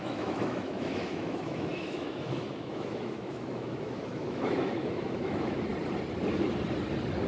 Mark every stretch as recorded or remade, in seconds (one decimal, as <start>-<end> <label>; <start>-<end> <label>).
0.0-5.7 remade; 5.7-7.3 recorded